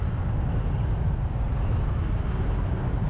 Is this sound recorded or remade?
recorded